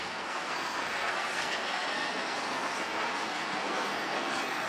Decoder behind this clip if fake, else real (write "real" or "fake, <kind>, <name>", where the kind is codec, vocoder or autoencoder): fake, codec, SNAC